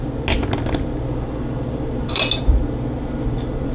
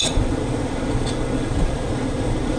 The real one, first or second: first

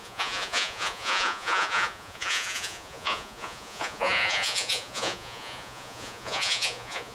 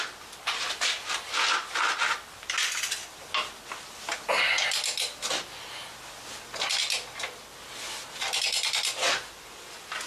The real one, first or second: second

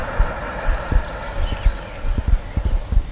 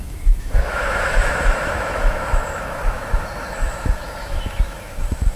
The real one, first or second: first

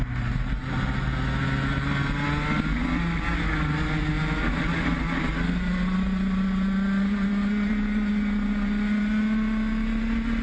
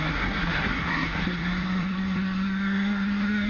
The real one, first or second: first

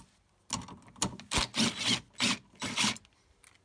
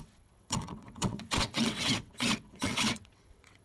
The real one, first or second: first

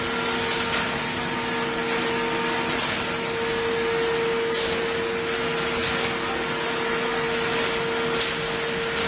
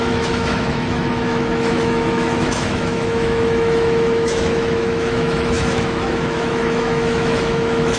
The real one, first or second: first